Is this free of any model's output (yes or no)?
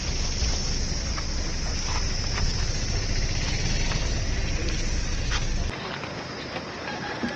yes